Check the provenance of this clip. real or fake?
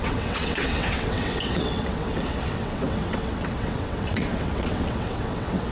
fake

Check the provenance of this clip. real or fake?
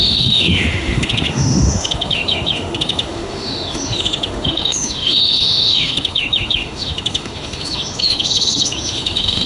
fake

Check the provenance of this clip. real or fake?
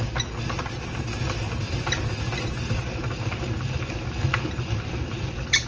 real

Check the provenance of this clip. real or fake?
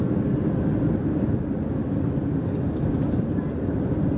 real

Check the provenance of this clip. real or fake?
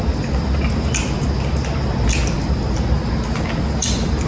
real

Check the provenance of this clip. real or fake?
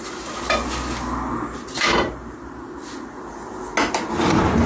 real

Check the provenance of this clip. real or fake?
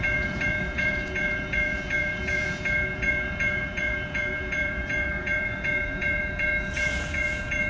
fake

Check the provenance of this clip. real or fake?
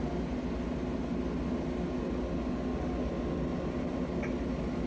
real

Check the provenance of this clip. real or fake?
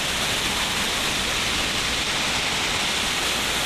real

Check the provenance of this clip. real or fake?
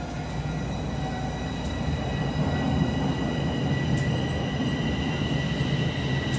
real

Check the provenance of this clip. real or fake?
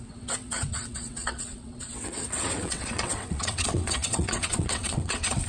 fake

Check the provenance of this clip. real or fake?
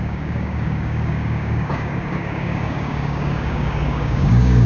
fake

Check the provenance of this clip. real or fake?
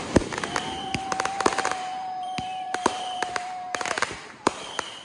fake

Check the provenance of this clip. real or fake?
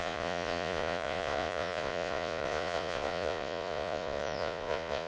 fake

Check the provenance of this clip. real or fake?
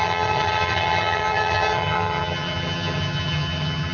fake